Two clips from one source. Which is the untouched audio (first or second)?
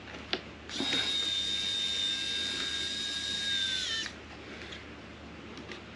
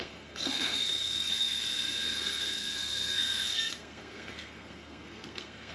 first